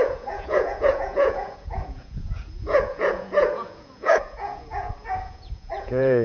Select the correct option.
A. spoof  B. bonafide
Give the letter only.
A